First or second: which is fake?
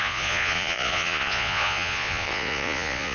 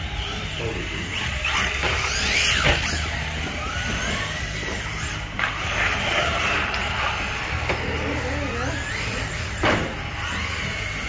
first